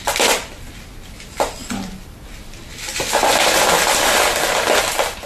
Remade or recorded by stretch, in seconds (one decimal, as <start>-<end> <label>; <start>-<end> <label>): 0.0-5.3 recorded